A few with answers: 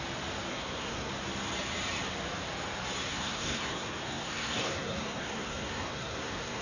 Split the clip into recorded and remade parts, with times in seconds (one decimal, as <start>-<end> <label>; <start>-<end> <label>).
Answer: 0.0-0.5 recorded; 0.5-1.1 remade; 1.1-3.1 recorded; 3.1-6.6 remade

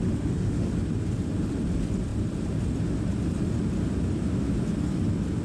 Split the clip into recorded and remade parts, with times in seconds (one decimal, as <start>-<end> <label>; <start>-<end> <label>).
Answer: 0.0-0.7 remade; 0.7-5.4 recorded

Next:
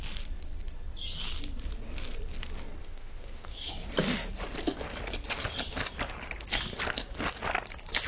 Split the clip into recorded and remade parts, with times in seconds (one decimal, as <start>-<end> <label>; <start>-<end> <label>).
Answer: 0.0-2.8 recorded; 2.8-3.7 remade; 3.7-8.1 recorded

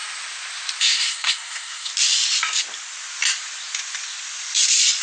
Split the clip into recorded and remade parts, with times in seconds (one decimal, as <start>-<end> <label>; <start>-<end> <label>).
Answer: 0.0-0.8 recorded; 0.8-1.9 remade; 1.9-5.0 recorded

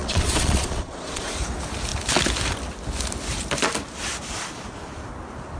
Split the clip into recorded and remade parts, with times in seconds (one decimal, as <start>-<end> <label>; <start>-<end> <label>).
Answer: 0.0-1.3 remade; 1.3-5.6 recorded